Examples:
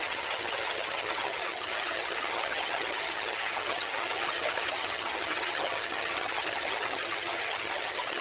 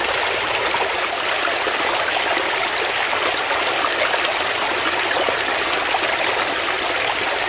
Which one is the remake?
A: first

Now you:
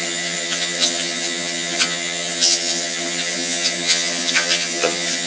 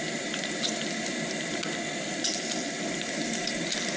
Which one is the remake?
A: first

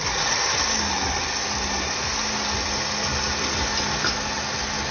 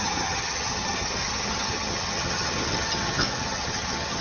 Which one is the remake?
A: second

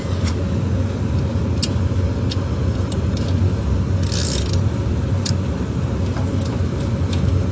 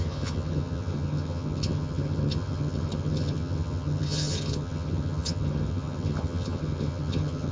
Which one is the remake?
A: second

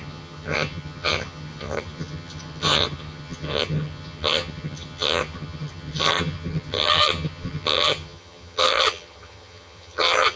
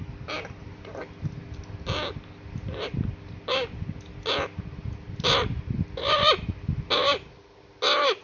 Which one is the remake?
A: first